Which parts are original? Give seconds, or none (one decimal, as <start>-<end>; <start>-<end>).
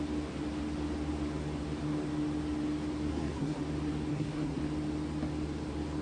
0.0-3.1; 3.6-4.1; 4.6-6.0